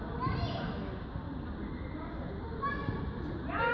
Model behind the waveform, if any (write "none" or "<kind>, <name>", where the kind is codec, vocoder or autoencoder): none